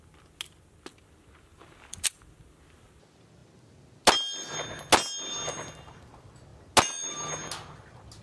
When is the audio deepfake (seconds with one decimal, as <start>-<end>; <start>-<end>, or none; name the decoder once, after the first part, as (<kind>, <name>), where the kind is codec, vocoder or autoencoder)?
1.5-2.1 (vocoder, BigVGAN v2)